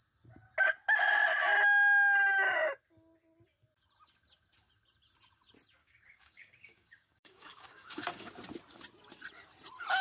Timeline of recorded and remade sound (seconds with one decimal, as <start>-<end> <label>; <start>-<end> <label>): 0.0-5.8 recorded; 5.8-8.3 remade; 8.3-10.0 recorded